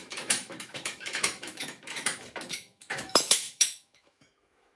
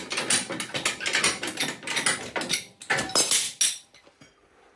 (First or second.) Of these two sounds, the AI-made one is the first